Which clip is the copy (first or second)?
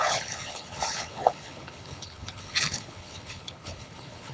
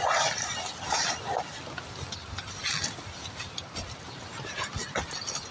first